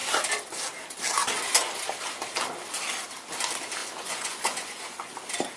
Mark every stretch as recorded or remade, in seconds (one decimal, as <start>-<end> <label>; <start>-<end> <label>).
0.0-3.8 recorded; 3.8-5.1 remade; 5.1-5.6 recorded